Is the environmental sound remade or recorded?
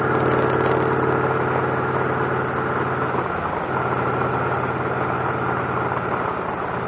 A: recorded